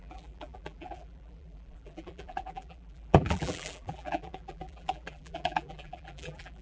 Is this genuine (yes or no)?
no